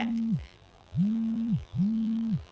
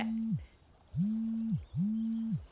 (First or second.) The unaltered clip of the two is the second